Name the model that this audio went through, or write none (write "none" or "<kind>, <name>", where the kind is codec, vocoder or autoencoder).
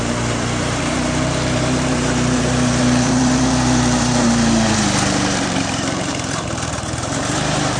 vocoder, BigVGAN v2